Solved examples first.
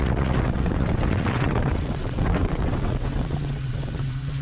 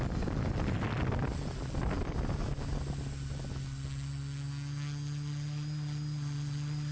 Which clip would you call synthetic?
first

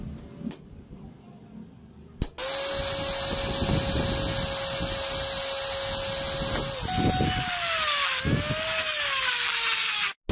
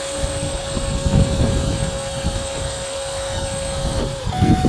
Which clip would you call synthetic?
second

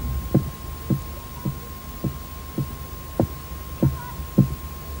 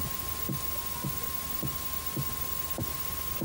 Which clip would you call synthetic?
second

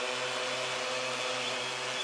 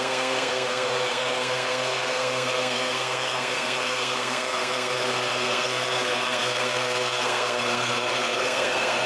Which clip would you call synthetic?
second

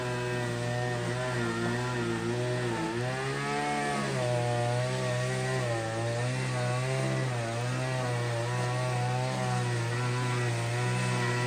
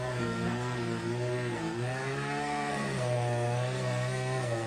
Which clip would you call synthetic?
second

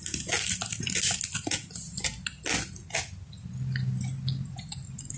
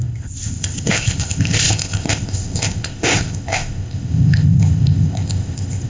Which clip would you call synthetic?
second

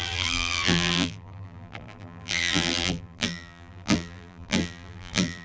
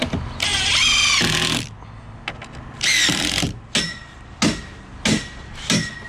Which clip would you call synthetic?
first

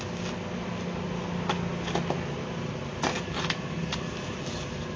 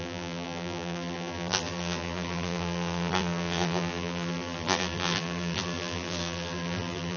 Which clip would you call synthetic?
second